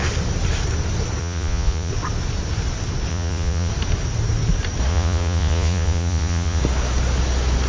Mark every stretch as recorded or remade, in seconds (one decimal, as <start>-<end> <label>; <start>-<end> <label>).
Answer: 0.0-1.2 recorded; 1.2-1.9 remade; 1.9-3.1 recorded; 3.1-3.7 remade; 3.7-4.9 recorded; 4.9-6.6 remade; 6.6-7.7 recorded